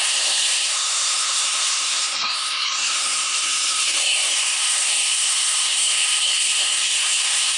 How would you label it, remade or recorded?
remade